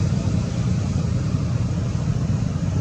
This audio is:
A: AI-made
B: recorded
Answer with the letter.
A